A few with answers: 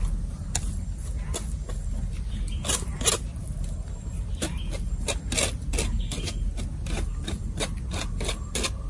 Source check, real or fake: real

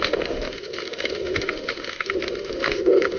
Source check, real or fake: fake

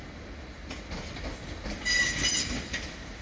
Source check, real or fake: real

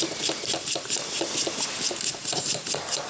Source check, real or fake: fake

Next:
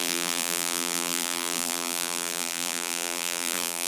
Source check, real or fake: fake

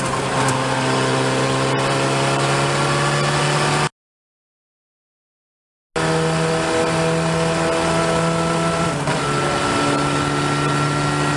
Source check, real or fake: real